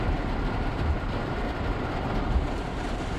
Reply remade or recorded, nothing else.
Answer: remade